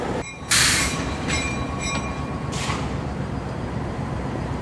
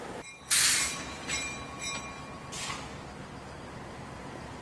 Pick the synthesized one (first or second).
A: first